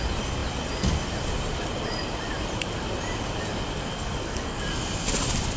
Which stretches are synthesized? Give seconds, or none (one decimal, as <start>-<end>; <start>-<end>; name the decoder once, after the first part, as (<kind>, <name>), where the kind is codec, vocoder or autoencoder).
3.8-4.6 (codec, SNAC)